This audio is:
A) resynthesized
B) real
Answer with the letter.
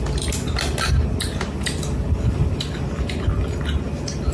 B